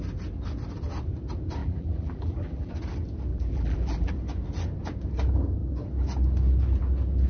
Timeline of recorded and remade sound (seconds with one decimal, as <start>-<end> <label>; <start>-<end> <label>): 0.0-1.6 recorded; 1.6-2.7 remade; 2.7-3.3 recorded; 3.3-4.1 remade; 4.1-7.3 recorded

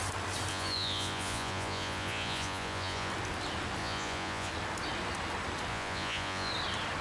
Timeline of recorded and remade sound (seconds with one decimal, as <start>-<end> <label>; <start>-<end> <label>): 0.0-0.5 recorded; 0.5-3.1 remade; 3.1-3.8 recorded; 3.8-4.5 remade; 4.5-5.7 recorded; 5.7-6.5 remade; 6.5-7.0 recorded